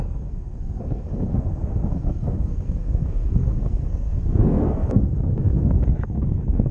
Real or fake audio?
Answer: fake